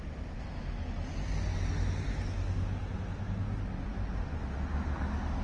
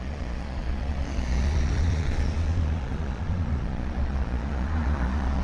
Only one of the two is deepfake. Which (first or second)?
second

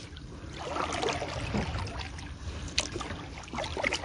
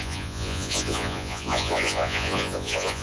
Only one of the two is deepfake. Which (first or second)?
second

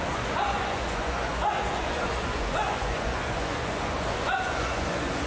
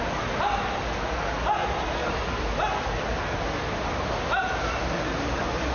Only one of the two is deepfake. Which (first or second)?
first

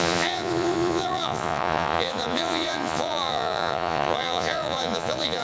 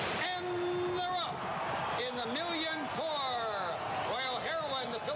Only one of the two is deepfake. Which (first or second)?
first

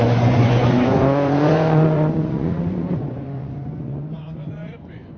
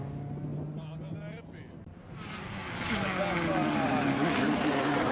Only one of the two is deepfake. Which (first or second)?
first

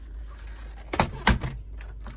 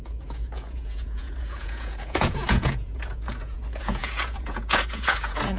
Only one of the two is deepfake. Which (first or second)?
second